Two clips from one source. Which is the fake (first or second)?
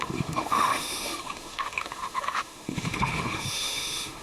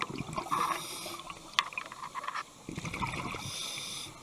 first